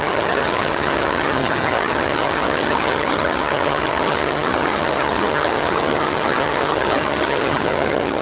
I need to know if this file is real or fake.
fake